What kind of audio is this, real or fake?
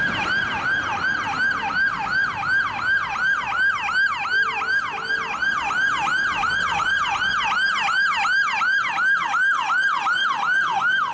real